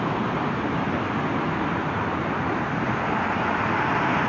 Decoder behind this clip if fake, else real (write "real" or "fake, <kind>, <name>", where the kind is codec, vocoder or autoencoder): real